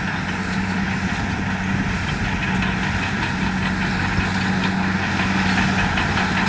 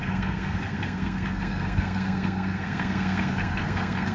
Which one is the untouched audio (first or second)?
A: first